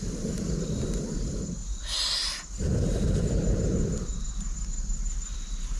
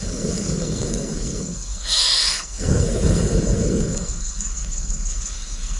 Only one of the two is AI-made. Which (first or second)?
second